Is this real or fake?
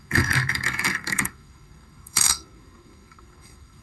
fake